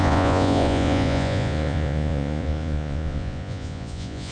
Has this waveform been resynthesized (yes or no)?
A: yes